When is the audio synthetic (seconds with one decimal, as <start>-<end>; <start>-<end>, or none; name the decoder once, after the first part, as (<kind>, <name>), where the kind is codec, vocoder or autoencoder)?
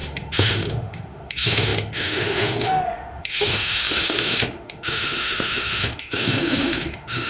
0.0-7.3 (autoencoder, DAC-VAE)